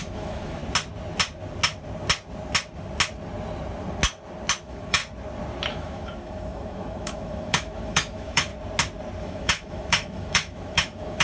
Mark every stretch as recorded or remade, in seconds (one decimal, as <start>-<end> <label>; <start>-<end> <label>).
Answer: 0.0-0.6 remade; 0.6-4.6 recorded; 4.6-5.0 remade; 5.0-5.7 recorded; 5.7-8.5 remade; 8.5-9.2 recorded; 9.2-11.2 remade